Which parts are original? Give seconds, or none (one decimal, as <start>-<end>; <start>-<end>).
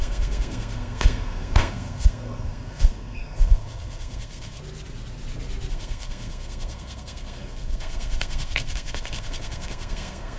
4.6-5.7